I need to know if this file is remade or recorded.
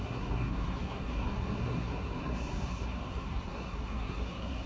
remade